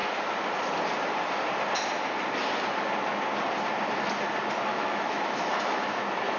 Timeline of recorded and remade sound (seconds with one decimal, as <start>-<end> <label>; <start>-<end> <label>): 0.0-4.7 recorded; 4.7-6.0 remade; 6.0-6.4 recorded